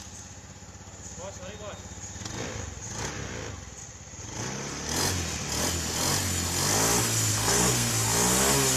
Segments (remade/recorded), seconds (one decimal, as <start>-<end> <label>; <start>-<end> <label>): 0.0-7.3 recorded; 7.3-7.9 remade; 7.9-8.8 recorded